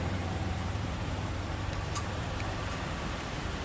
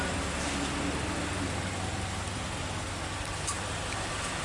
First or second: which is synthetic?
first